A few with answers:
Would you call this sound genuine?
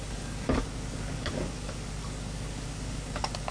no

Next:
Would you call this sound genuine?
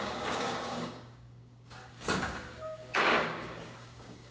no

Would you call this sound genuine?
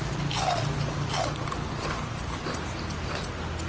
yes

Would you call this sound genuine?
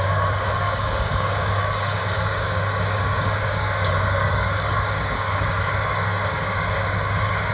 no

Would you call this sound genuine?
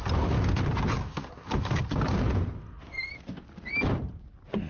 yes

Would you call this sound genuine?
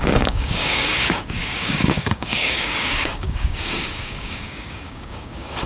no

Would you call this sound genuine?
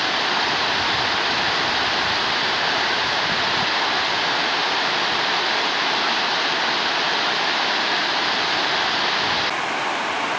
yes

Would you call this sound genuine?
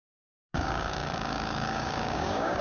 no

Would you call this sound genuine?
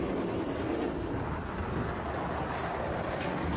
yes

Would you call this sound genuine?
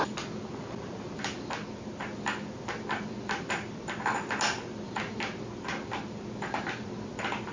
yes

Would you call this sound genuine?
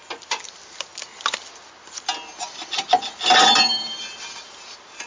yes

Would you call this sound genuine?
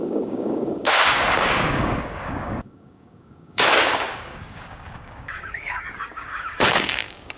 no